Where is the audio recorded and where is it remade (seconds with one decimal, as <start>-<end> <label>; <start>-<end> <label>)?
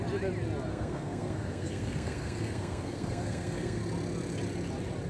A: 0.0-0.7 recorded; 0.7-3.8 remade; 3.8-5.1 recorded